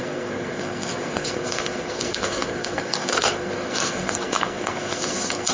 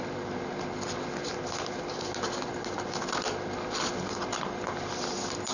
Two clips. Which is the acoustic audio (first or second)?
second